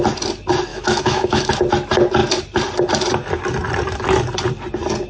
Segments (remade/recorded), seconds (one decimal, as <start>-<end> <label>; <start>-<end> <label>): 0.0-0.7 recorded; 0.7-1.5 remade; 1.5-5.1 recorded